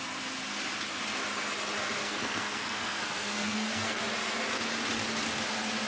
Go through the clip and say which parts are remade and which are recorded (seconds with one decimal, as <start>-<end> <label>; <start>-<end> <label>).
0.0-2.0 recorded; 2.0-4.0 remade; 4.0-5.9 recorded